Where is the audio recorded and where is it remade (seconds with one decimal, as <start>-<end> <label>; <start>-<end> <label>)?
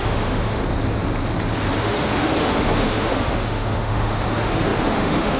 0.0-0.6 remade; 0.6-1.8 recorded; 1.8-5.4 remade